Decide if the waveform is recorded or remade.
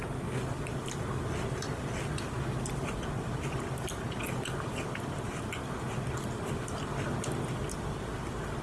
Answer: recorded